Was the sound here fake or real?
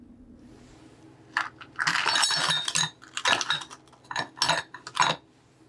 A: real